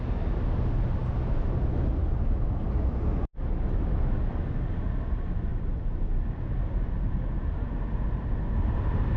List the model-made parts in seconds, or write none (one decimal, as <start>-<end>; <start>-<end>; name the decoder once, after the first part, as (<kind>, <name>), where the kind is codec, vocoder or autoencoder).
none

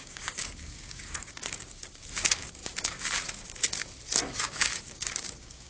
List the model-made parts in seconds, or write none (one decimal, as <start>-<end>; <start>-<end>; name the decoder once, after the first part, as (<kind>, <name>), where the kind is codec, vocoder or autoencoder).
0.0-3.9 (codec, DAC); 4.4-5.7

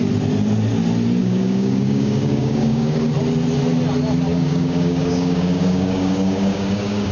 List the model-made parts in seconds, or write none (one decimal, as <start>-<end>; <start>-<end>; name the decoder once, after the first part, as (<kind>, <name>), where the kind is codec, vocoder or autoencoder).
1.2-3.1 (codec, DAC); 4.3-7.1

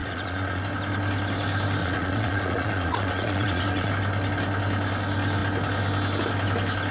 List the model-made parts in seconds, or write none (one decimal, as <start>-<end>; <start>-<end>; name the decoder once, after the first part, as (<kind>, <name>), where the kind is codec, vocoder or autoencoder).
0.0-0.6 (vocoder, Vocos); 1.8-3.9

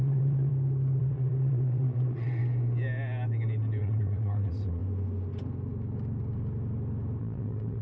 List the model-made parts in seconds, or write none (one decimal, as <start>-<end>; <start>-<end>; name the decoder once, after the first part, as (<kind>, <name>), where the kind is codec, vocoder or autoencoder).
0.0-0.5 (vocoder, WaveNeXt); 1.0-2.4; 3.8-4.8; 7.2-7.8